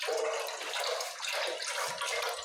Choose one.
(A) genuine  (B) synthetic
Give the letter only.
A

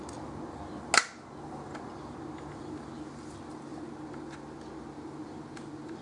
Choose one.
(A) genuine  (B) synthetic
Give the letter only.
A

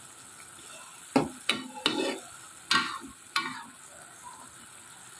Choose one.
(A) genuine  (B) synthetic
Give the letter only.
A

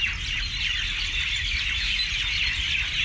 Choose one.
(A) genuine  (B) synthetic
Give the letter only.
A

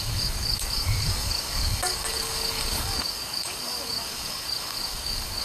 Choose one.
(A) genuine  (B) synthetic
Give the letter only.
B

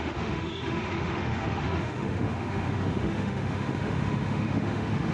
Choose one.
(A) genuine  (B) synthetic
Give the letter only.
B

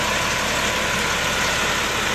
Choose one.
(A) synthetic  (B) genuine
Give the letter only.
B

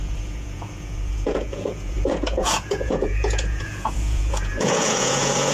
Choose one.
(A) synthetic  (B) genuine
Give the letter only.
A